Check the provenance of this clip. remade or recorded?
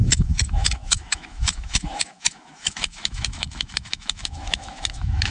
remade